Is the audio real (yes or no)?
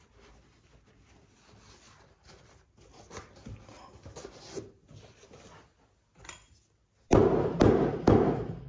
yes